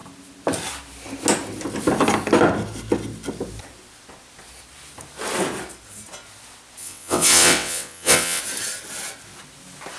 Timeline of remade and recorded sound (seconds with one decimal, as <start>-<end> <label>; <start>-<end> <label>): 0.0-6.8 recorded; 6.8-8.4 remade; 8.4-10.0 recorded